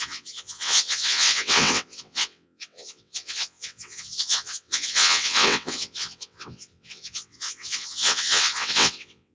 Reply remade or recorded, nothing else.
remade